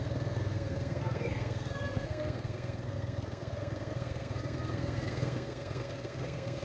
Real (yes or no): no